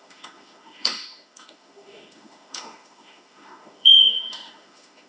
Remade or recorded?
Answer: remade